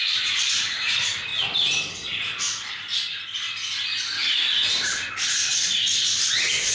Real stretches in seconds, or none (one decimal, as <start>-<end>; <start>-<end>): 1.3-4.5